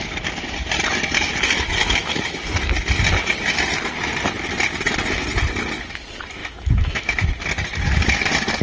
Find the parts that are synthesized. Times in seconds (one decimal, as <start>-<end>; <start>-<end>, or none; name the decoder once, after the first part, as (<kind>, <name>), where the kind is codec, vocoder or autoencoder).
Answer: 1.8-2.4 (autoencoder, DAC-VAE); 6.4-7.3